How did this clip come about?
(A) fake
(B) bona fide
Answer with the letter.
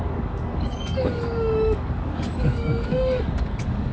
A